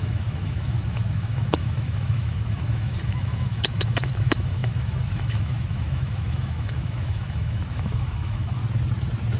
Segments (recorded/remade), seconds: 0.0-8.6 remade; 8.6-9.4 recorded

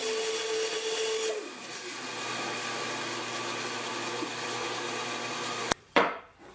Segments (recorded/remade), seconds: 0.0-6.5 recorded

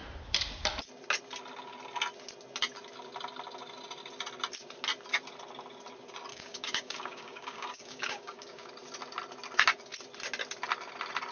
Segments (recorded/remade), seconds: 0.0-6.3 recorded; 6.3-8.7 remade; 8.7-11.3 recorded